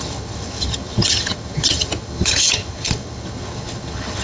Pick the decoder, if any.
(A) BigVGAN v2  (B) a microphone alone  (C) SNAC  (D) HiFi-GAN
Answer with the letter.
D